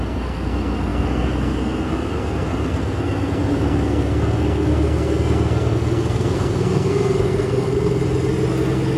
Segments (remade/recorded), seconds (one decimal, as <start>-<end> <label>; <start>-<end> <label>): 0.0-8.0 remade; 8.0-8.5 recorded; 8.5-9.0 remade